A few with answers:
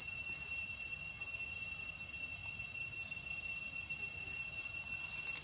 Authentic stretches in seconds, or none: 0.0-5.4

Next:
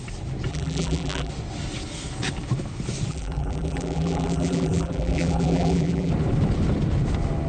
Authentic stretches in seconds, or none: 0.0-0.5; 1.3-3.1; 6.1-7.5

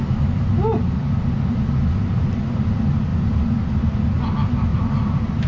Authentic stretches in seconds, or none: 0.0-4.7

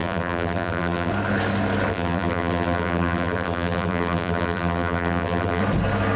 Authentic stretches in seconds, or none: 1.1-1.9; 5.6-6.2

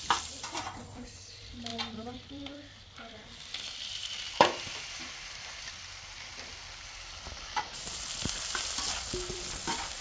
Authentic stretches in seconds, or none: none

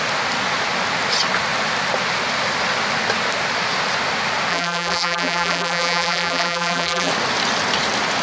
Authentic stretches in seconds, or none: 0.0-4.5; 7.1-8.2